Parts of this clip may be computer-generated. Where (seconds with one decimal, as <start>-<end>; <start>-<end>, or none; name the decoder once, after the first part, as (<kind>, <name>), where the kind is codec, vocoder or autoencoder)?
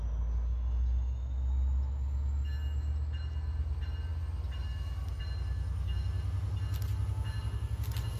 none